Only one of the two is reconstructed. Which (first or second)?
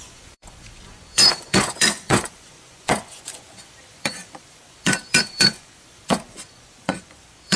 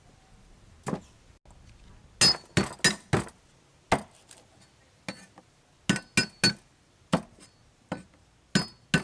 first